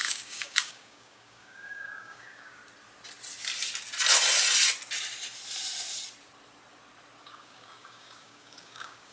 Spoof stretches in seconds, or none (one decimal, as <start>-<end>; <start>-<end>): 0.0-2.6; 7.2-9.1

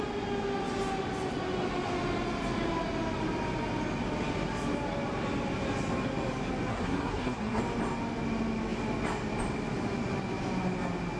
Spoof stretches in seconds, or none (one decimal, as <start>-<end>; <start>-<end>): 6.7-7.6

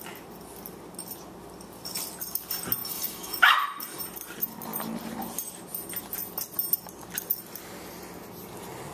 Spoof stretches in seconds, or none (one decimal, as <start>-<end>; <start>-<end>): 2.8-4.0

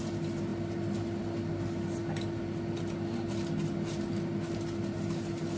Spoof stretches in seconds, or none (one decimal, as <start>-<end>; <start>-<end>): none

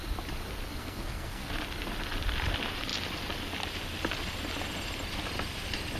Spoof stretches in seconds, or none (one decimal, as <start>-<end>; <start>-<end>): 0.8-1.5

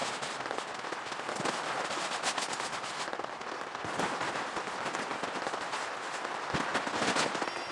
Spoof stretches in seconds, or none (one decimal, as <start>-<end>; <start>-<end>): none

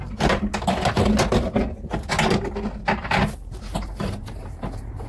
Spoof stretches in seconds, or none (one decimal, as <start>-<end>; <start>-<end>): 0.0-0.5; 3.6-5.1

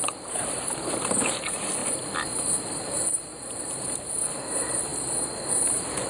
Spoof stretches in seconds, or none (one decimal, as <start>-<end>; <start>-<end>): 0.0-1.8; 2.3-6.1